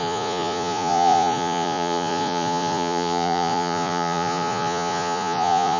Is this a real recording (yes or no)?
no